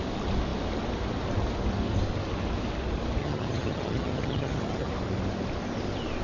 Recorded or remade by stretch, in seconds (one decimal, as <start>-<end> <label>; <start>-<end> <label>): 0.0-3.2 recorded; 3.2-4.9 remade; 4.9-6.2 recorded